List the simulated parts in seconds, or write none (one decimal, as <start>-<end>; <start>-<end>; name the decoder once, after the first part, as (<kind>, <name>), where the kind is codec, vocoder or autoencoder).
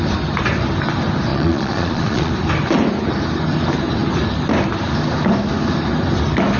1.3-2.3 (vocoder, Vocos)